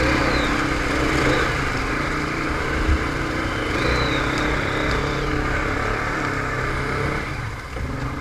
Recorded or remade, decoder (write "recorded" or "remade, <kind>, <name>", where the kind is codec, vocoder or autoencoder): recorded